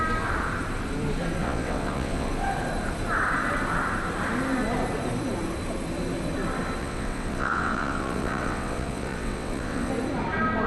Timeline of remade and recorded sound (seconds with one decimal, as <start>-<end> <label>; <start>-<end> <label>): 0.0-1.4 recorded; 1.4-2.3 remade; 2.3-6.8 recorded; 6.8-9.9 remade; 9.9-10.7 recorded